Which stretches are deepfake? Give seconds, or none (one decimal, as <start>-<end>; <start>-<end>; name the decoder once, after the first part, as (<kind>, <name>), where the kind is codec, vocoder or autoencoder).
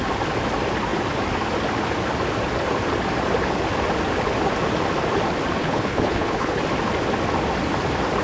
5.6-6.6 (codec, HILCodec)